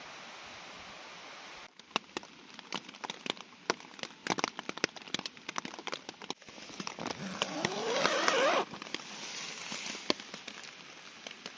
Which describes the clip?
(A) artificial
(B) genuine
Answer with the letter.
B